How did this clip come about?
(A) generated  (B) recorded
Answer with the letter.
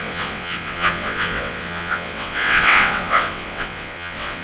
A